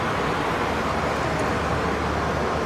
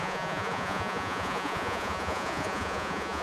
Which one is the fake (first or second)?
second